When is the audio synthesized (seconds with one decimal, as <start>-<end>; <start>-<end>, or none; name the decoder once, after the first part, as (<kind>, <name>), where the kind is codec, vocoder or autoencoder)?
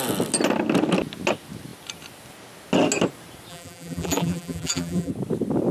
3.5-5.1 (vocoder, BigVGAN v2)